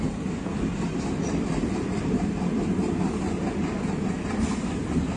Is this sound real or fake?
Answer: real